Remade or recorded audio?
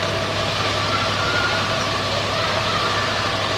recorded